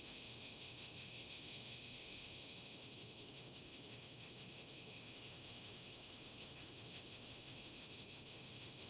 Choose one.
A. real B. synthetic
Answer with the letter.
B